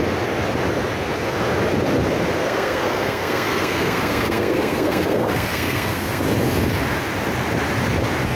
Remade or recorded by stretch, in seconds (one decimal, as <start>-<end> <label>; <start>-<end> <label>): 0.0-2.4 recorded; 2.4-6.2 remade; 6.2-8.4 recorded